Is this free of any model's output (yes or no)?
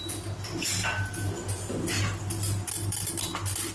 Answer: yes